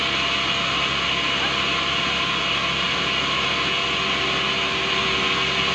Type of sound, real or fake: real